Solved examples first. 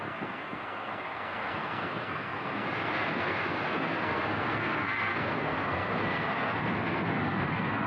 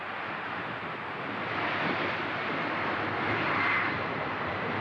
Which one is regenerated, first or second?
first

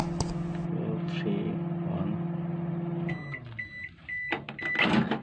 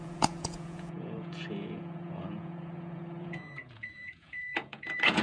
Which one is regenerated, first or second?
second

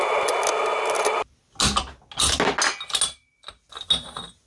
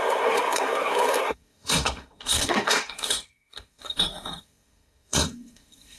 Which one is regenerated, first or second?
second